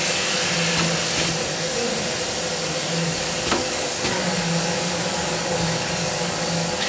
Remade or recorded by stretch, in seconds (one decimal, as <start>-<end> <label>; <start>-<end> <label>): 0.0-0.5 remade; 0.5-1.5 recorded; 1.5-1.9 remade; 1.9-2.5 recorded; 2.5-6.9 remade